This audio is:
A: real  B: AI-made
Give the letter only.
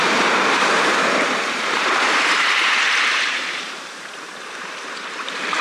B